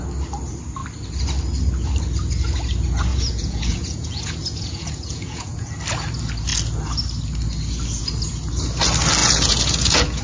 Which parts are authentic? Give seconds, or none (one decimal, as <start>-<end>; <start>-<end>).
0.0-3.1; 5.7-9.2